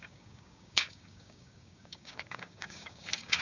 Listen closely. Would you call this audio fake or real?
fake